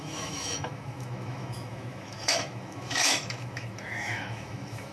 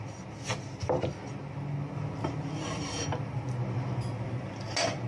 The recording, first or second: second